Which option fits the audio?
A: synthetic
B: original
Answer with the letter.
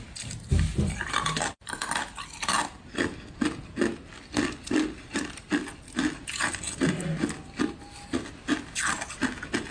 B